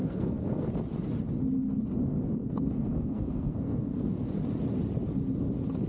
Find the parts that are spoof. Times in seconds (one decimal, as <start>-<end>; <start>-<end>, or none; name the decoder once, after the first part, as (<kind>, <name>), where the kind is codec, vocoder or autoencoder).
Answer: 0.0-0.7 (codec, SNAC); 2.4-4.2

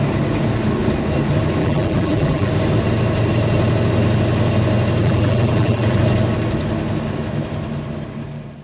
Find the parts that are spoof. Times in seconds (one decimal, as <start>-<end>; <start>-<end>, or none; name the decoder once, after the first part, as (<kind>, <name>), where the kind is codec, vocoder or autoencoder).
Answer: 1.6-2.5 (vocoder, BigVGAN v2); 5.0-6.0

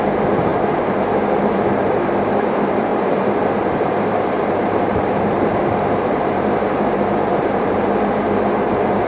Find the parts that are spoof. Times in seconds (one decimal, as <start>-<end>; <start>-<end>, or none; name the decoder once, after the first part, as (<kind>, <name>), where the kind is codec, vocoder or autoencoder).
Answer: 0.0-9.1 (vocoder, BigVGAN v2)

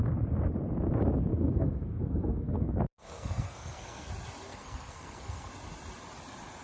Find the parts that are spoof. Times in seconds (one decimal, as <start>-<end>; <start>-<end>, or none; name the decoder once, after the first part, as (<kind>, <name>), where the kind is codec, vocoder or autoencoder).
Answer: 1.3-4.1 (codec, SNAC); 4.5-5.5

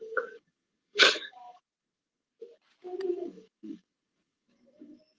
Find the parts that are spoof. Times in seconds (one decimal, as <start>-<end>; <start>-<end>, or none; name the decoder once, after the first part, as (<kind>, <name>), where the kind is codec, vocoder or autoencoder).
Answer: 0.0-2.3 (codec, DAC); 3.1-5.2

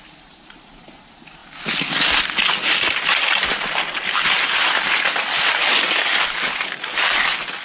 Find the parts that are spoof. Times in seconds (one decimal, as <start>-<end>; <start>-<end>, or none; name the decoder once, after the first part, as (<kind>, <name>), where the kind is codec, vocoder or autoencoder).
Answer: none